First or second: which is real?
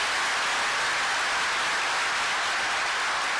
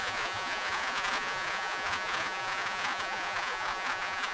first